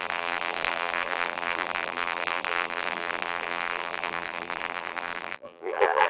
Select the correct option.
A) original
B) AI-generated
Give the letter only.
B